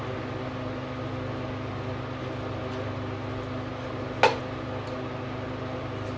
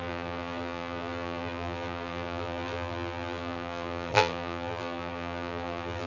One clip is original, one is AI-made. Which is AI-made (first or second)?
second